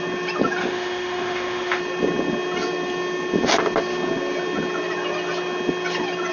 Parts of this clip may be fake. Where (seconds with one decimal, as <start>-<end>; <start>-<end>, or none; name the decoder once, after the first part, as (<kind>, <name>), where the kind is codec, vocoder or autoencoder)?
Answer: 0.6-1.8 (autoencoder, DAC-VAE)